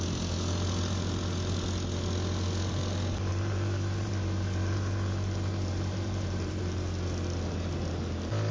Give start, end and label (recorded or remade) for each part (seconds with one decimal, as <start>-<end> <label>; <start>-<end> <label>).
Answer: 0.0-3.3 recorded; 3.3-6.6 remade; 6.6-8.5 recorded